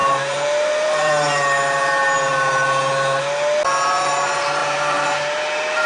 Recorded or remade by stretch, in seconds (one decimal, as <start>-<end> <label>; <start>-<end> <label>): 0.0-1.1 remade; 1.1-4.6 recorded; 4.6-5.9 remade